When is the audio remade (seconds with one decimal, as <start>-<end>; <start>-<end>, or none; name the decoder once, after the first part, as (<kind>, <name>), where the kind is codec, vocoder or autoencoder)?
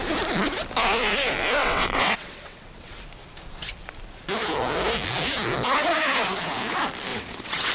1.6-3.0 (vocoder, WaveNeXt); 7.1-7.7